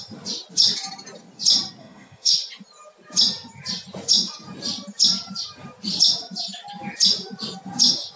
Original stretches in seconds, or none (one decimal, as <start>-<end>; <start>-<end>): 0.0-1.8; 2.3-8.2